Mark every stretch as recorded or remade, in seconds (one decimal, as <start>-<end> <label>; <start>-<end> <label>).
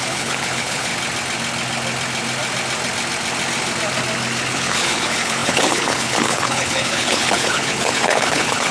0.0-0.9 remade; 0.9-4.5 recorded; 4.5-8.7 remade